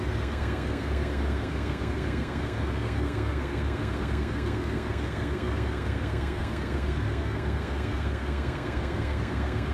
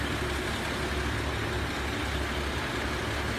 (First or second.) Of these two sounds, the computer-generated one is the first